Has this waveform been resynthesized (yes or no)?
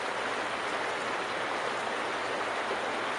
no